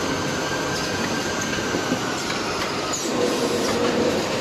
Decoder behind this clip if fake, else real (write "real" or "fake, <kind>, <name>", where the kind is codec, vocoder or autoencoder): real